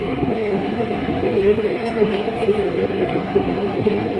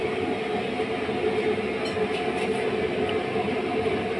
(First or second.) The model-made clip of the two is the first